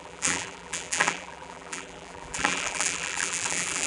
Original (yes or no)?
no